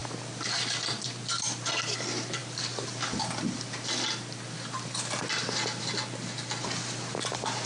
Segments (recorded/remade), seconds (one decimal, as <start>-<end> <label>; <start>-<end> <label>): 0.0-1.9 remade; 1.9-2.4 recorded; 2.4-5.8 remade; 5.8-7.7 recorded